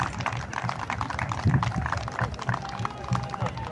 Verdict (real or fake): real